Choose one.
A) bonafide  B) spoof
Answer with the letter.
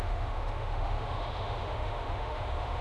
B